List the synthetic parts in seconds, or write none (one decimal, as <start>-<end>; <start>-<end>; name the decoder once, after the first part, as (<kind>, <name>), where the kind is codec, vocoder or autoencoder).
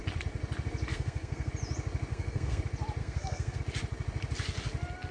0.9-1.5 (codec, SNAC); 2.1-2.6; 3.0-3.6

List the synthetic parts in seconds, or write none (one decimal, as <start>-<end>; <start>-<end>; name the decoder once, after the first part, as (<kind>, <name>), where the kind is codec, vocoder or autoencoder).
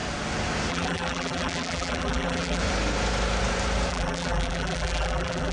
0.7-2.6 (vocoder, BigVGAN v2); 3.9-5.5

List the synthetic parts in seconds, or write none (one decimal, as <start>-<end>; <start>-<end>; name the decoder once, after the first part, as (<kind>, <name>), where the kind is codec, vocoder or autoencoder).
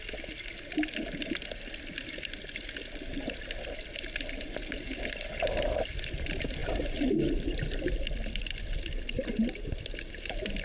none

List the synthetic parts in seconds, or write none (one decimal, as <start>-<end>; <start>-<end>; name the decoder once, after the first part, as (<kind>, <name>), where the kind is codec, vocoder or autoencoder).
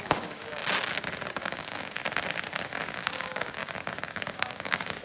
0.0-0.6 (codec, DAC); 1.3-2.0; 2.8-5.0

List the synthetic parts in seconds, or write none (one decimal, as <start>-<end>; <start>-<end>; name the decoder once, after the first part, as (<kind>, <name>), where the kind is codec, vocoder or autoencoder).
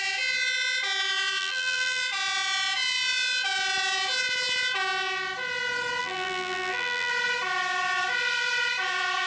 1.4-2.0 (vocoder, BigVGAN v2); 6.0-7.1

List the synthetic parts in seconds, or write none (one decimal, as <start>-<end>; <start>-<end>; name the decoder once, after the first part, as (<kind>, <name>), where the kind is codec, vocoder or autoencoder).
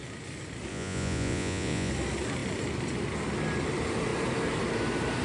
0.7-1.9 (vocoder, Vocos)